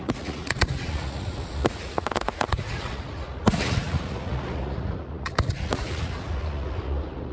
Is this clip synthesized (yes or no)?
yes